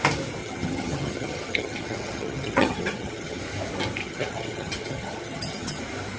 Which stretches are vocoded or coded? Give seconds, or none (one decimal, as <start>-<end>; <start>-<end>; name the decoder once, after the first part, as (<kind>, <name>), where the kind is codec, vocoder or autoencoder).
0.4-3.4 (vocoder, HiFi-GAN); 4.0-5.8